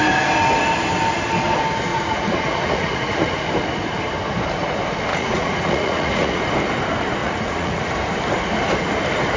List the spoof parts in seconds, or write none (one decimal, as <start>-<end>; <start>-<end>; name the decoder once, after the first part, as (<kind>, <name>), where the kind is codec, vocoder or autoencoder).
1.9-3.5 (vocoder, Vocos); 5.1-6.4; 7.2-7.8

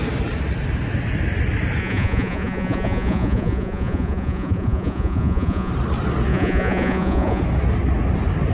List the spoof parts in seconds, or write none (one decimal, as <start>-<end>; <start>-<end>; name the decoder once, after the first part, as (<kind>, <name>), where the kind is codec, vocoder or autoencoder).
1.8-5.7 (vocoder, Vocos); 6.3-7.4

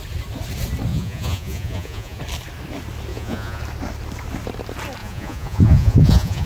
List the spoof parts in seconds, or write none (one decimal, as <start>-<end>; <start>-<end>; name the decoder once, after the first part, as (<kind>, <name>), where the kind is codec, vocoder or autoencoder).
0.9-2.2 (vocoder, Vocos); 3.1-3.6; 5.0-6.5

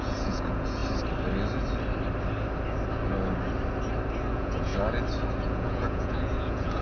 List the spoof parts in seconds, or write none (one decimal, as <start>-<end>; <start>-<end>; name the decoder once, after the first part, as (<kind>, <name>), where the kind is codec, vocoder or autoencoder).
0.0-0.8 (vocoder, Vocos); 4.3-4.7; 5.3-6.8

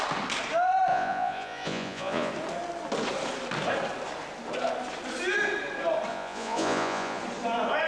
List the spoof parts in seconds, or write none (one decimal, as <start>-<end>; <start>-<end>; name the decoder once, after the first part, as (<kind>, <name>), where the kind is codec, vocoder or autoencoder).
0.9-2.3 (vocoder, Vocos); 6.1-7.2

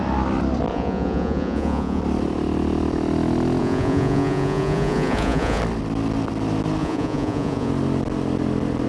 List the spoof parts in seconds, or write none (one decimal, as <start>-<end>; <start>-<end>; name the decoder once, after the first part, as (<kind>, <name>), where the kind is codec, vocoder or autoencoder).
0.7-2.0 (vocoder, Vocos); 3.6-5.6; 6.8-7.7

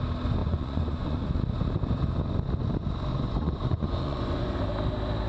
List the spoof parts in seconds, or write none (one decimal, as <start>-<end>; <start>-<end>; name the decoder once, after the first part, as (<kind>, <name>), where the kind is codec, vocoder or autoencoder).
0.4-1.2 (vocoder, Vocos); 3.1-4.6

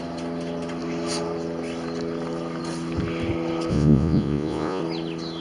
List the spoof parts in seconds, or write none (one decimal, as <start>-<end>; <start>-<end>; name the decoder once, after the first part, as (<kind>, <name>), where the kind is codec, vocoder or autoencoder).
3.7-4.8 (vocoder, Vocos)